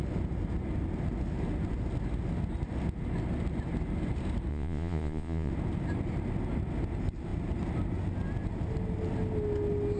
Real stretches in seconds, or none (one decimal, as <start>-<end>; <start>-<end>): 0.0-4.5; 5.5-10.0